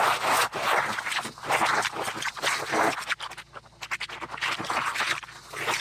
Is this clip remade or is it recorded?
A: recorded